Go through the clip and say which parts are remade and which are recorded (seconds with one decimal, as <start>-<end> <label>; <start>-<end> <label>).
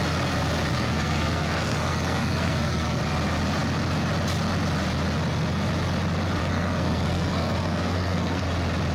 0.0-0.7 recorded; 0.7-3.0 remade; 3.0-6.4 recorded; 6.4-8.4 remade; 8.4-8.9 recorded